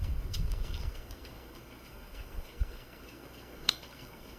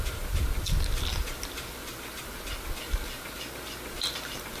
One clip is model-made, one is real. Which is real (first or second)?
second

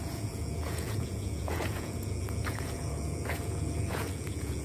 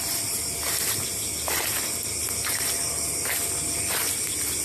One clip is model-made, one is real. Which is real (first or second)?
second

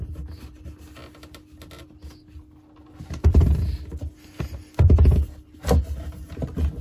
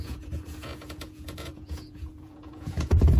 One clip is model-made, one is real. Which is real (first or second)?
first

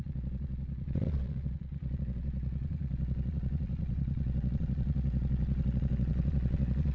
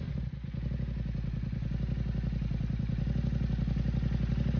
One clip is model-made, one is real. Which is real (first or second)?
second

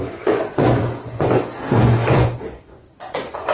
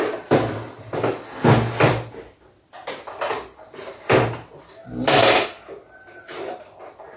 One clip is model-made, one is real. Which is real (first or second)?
second